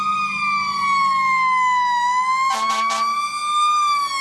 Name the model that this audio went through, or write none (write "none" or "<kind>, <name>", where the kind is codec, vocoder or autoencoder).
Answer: none